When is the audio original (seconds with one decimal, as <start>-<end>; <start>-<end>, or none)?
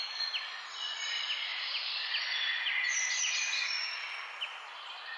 0.0-1.5; 2.2-5.2